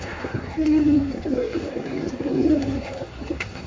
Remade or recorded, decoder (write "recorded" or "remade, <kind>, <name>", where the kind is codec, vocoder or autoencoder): remade, codec, SNAC